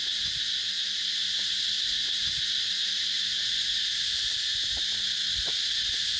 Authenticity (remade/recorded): recorded